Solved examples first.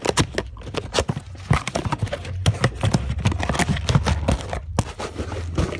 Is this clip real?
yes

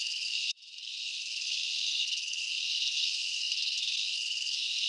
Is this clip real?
no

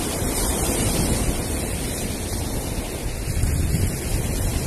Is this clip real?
yes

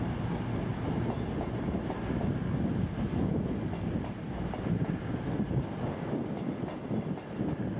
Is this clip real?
yes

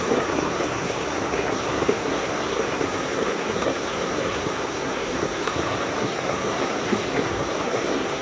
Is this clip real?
no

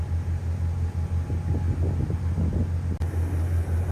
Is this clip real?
yes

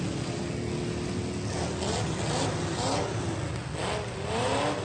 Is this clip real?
yes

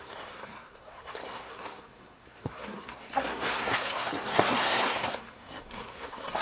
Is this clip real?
no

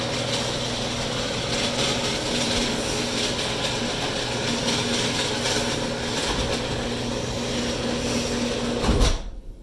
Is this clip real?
yes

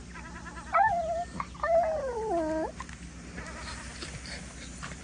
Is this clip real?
yes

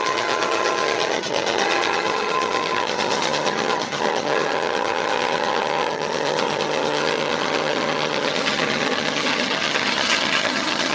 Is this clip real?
no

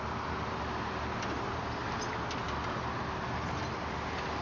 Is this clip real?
yes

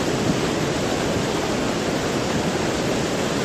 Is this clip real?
yes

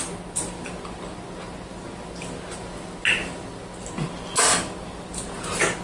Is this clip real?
yes